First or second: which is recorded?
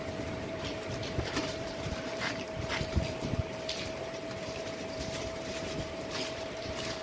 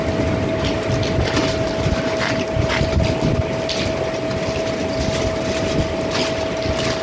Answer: second